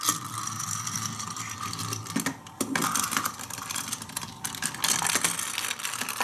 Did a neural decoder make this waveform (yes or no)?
no